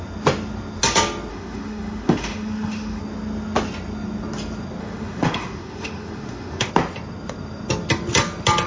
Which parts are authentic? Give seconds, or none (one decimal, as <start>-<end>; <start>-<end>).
0.0-1.3; 3.0-4.8; 6.7-8.7